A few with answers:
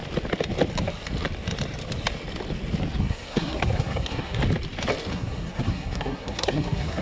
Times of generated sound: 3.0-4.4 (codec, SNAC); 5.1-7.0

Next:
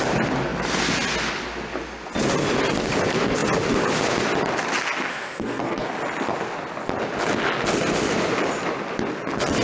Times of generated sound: 5.1-5.9 (codec, SNAC)

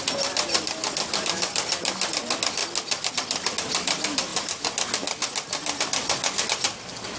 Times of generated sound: none

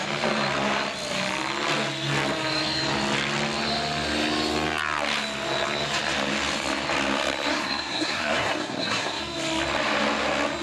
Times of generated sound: 7.5-9.2 (codec, SNAC)